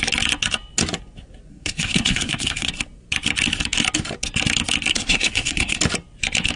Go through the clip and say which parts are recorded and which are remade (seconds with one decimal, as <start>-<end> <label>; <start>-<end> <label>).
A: 0.0-1.5 recorded; 1.5-2.7 remade; 2.7-4.9 recorded; 4.9-5.8 remade; 5.8-6.6 recorded